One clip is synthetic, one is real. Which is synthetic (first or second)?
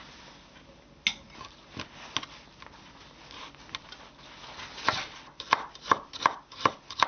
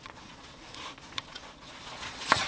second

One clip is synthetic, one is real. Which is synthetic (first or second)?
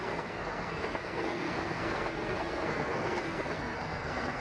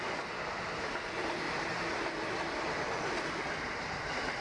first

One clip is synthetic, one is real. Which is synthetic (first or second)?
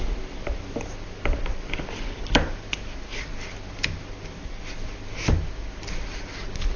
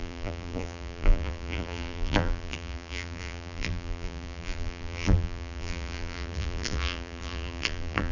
second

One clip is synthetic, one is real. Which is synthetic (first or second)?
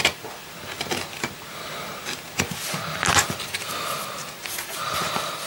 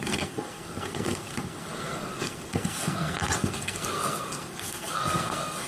second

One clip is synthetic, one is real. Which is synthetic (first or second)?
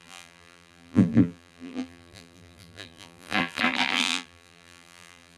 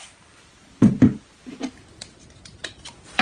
first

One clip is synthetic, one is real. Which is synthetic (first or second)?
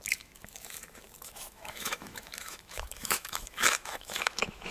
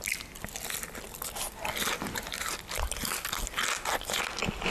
first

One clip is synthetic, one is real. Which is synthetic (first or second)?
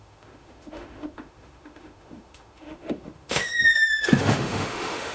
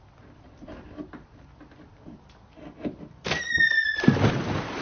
first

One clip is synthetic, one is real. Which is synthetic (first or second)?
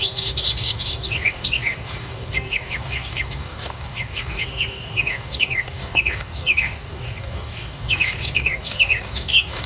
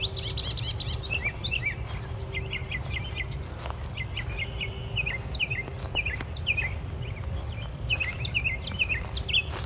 first